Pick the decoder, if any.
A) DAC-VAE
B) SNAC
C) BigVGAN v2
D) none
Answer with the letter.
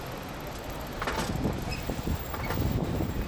D